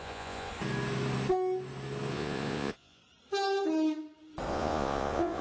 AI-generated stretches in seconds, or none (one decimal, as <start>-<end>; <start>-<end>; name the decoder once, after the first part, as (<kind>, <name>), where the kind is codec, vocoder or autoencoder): 0.0-0.5 (vocoder, Vocos); 2.1-3.0; 4.5-5.4